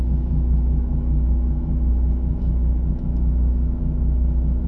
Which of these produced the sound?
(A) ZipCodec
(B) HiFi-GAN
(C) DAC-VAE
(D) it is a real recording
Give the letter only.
C